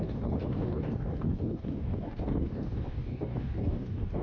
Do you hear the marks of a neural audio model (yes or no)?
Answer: yes